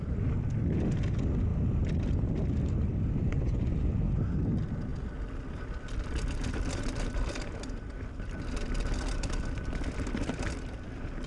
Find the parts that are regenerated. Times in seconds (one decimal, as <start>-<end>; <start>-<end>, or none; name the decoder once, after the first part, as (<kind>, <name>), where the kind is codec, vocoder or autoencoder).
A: 3.3-3.9 (vocoder, Vocos)